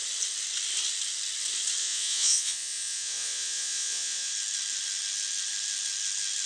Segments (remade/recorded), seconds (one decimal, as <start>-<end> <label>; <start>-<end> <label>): 0.0-1.8 recorded; 1.8-4.3 remade; 4.3-6.5 recorded